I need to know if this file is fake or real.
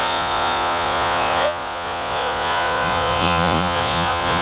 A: fake